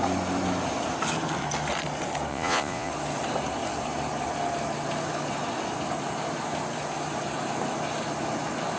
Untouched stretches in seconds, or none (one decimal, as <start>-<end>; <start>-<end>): 0.0-2.3; 2.9-8.8